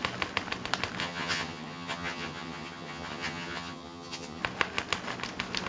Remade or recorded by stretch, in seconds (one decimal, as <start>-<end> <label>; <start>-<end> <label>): 0.0-1.0 recorded; 1.0-4.4 remade; 4.4-5.7 recorded